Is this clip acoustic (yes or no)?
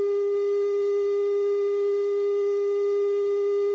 no